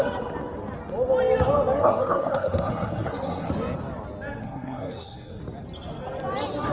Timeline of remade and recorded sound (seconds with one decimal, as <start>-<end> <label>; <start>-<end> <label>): 0.0-1.8 recorded; 1.8-3.5 remade; 3.5-4.4 recorded; 4.4-5.4 remade; 5.4-6.7 recorded